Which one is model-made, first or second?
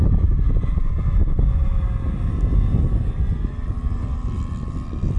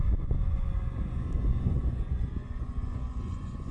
second